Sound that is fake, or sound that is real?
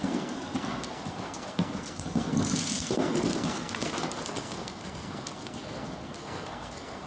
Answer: fake